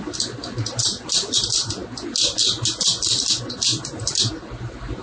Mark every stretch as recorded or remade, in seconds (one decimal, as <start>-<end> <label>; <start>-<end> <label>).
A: 0.0-5.0 recorded